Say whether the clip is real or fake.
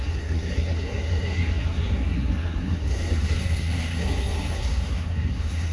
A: fake